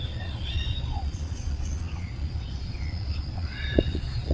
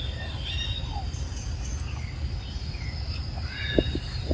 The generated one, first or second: first